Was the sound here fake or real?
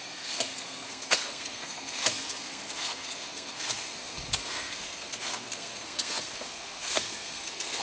fake